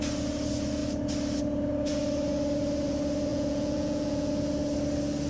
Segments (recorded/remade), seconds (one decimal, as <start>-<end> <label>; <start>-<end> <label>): 0.0-3.3 recorded; 3.3-4.3 remade; 4.3-5.3 recorded